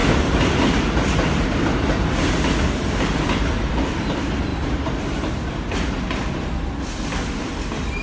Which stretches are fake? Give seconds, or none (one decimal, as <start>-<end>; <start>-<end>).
none